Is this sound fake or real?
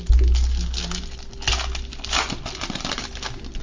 real